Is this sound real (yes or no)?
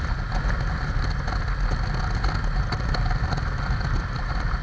yes